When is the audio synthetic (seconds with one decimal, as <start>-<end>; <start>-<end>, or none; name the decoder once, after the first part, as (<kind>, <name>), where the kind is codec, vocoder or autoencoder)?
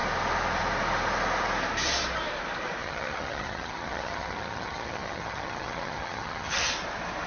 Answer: 2.8-6.7 (vocoder, HiFi-GAN)